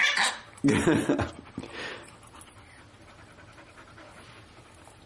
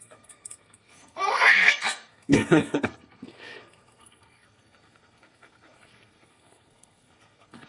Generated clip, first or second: second